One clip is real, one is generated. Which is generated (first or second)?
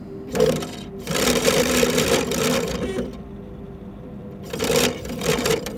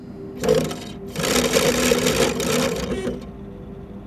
first